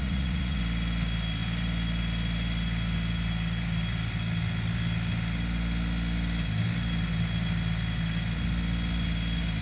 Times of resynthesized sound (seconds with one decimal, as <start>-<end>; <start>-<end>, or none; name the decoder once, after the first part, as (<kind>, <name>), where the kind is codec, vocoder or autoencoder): 0.0-0.6 (vocoder, Vocos)